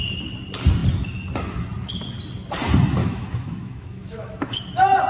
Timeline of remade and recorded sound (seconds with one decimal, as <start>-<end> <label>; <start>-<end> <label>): 0.0-3.0 recorded; 3.0-4.5 remade; 4.5-5.1 recorded